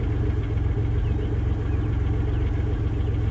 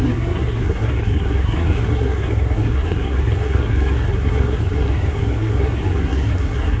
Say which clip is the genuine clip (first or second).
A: first